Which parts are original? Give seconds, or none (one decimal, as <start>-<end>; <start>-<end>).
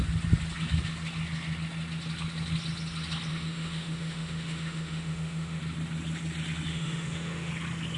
0.0-3.3; 5.6-6.7; 7.5-8.0